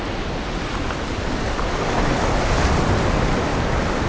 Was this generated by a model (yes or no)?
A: no